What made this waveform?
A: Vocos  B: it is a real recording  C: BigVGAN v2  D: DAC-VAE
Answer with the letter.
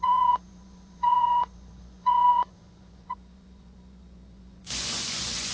A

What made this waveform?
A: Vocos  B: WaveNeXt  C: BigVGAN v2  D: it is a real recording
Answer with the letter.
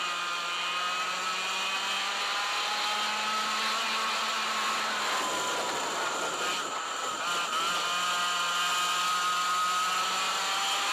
D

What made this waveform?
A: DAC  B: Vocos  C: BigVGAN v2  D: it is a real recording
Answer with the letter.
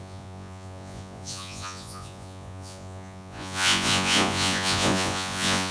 B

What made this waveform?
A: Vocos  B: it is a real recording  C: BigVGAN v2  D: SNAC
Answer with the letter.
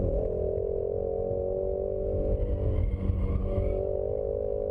B